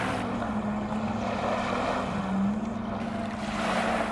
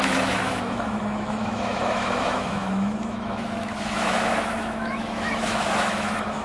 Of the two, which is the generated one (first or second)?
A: second